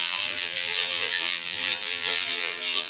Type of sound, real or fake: fake